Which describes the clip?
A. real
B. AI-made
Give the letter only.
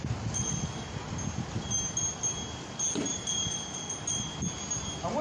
A